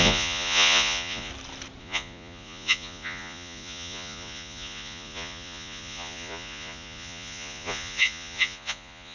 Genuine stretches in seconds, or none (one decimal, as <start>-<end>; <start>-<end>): 1.3-1.8